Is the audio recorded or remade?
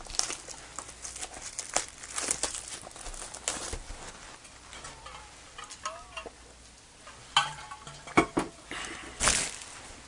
recorded